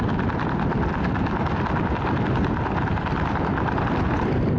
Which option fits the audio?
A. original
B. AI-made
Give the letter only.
A